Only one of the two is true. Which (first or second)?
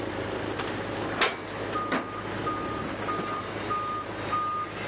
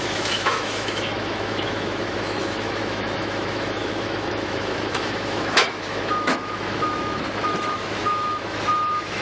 first